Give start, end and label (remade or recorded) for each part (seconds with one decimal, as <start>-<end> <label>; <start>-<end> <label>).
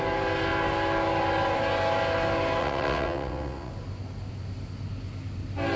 0.0-2.6 recorded; 2.6-3.7 remade; 3.7-5.8 recorded